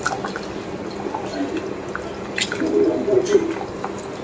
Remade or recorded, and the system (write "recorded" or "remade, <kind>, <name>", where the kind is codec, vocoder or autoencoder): recorded